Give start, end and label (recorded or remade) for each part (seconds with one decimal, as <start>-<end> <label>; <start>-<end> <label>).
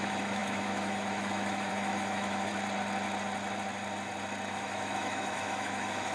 0.0-2.5 remade; 2.5-4.5 recorded; 4.5-6.1 remade